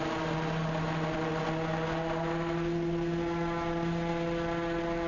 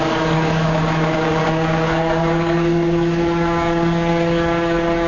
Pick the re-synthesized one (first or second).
second